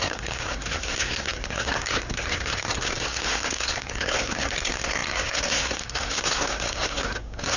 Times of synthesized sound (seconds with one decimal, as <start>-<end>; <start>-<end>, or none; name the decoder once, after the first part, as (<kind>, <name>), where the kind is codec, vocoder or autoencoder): 0.0-7.6 (codec, SNAC)